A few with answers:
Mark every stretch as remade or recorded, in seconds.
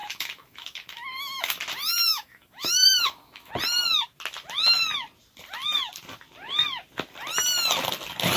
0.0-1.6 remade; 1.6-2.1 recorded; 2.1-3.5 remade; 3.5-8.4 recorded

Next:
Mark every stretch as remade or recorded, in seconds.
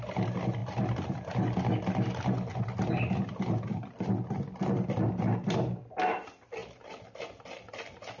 0.0-8.2 recorded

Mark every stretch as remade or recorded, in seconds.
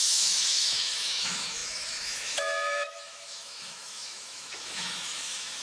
0.0-5.6 remade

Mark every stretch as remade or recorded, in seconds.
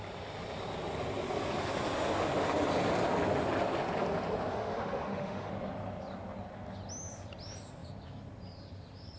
0.0-4.5 recorded; 4.5-5.5 remade; 5.5-9.2 recorded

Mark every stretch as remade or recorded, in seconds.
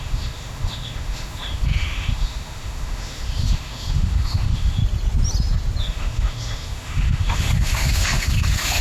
0.0-4.8 remade; 4.8-5.8 recorded; 5.8-8.8 remade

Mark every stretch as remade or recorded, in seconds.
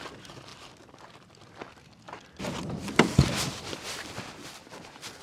0.0-5.2 recorded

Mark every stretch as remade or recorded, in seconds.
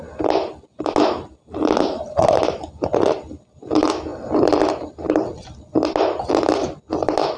0.0-7.4 recorded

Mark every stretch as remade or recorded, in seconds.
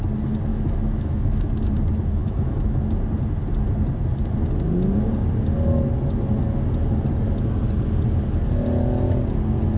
0.0-0.5 recorded; 0.5-1.5 remade; 1.5-2.2 recorded; 2.2-2.8 remade; 2.8-9.8 recorded